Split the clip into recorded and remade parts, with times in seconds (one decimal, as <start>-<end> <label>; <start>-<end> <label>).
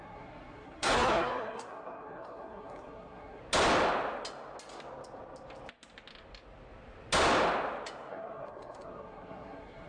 0.0-3.4 remade; 3.4-8.1 recorded; 8.1-9.9 remade